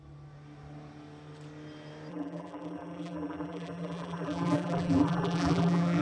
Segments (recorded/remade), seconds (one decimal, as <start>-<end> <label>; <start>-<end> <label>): 0.0-2.1 recorded; 2.1-6.0 remade